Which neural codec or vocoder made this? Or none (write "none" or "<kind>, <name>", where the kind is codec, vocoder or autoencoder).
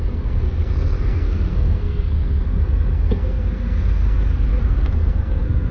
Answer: codec, SNAC